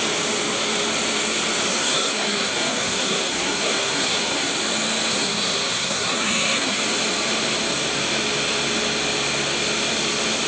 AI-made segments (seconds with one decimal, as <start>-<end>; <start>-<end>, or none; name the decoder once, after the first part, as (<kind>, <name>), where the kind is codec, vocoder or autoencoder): 1.7-4.5 (codec, SNAC); 5.1-6.8